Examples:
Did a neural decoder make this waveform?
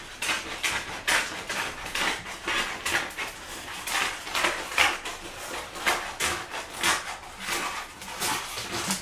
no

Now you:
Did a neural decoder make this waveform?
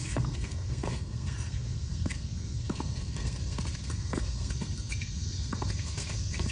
yes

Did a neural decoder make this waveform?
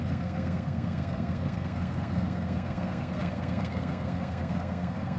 yes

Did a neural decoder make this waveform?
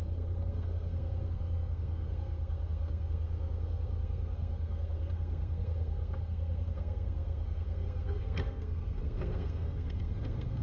yes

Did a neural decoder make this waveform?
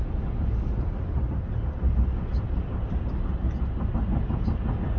no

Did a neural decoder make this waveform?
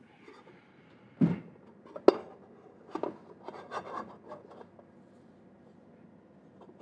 no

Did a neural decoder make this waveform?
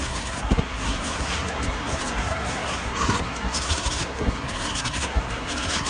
yes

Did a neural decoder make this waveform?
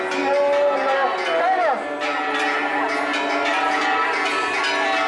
no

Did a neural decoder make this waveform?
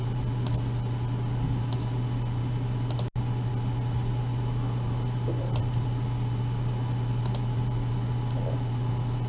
no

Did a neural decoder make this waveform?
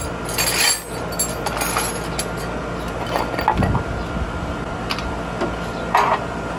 no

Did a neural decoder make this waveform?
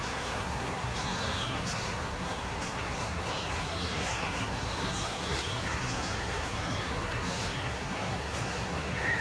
yes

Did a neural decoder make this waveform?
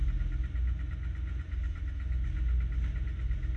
no